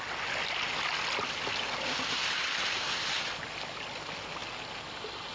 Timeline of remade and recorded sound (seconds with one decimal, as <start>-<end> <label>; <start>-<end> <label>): 0.0-5.3 recorded